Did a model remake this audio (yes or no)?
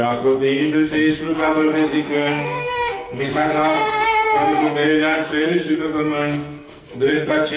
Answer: yes